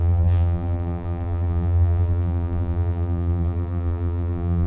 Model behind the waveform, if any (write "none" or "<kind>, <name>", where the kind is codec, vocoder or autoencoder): vocoder, BigVGAN v2